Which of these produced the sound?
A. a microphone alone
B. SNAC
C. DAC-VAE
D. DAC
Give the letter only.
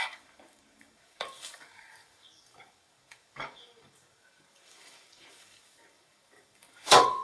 D